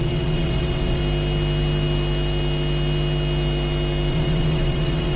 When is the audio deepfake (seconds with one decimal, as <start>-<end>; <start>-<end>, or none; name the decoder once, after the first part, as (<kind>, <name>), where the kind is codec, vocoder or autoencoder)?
0.0-1.0 (vocoder, WaveNeXt); 4.1-5.2